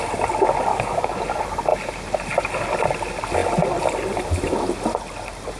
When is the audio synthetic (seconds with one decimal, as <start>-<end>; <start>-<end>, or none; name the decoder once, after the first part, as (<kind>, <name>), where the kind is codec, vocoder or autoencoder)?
0.7-1.2 (codec, DAC)